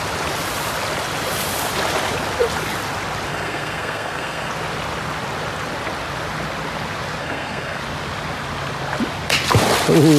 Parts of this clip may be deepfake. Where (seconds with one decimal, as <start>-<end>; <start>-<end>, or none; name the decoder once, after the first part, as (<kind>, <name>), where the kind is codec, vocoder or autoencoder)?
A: 3.3-4.5 (codec, SNAC); 7.2-7.8